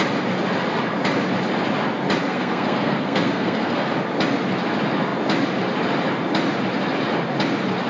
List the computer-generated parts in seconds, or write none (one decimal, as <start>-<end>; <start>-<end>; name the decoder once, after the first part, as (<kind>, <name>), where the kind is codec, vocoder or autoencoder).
2.2-3.9 (codec, SNAC)